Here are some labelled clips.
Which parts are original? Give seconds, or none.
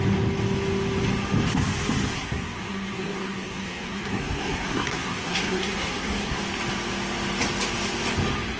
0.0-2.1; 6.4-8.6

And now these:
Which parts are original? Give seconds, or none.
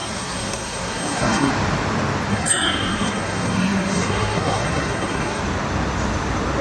1.5-2.3; 5.4-6.6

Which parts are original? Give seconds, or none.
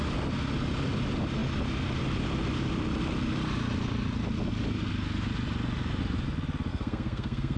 0.0-6.7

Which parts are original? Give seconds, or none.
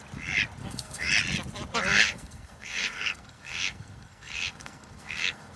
0.0-0.6; 1.1-2.0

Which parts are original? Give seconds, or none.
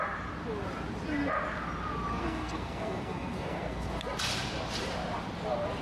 0.0-2.1; 3.9-5.8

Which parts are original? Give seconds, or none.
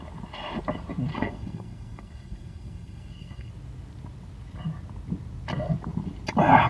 0.0-1.1; 3.5-6.7